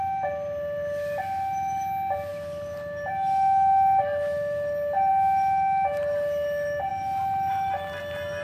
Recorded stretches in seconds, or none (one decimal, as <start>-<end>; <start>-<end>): 0.0-8.4